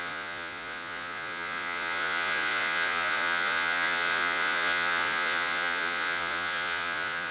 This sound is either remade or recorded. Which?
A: remade